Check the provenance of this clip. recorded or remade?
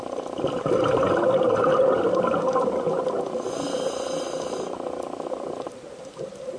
recorded